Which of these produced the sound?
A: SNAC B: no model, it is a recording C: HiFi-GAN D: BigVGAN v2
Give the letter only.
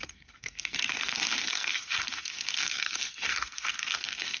A